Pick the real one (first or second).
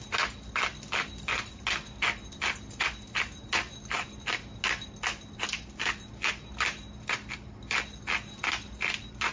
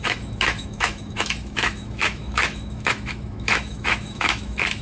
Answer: first